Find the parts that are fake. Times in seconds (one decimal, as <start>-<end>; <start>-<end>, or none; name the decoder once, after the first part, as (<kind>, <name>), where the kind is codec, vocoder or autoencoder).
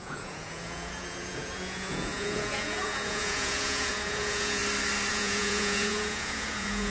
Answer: 0.0-4.6 (vocoder, Vocos); 5.1-6.9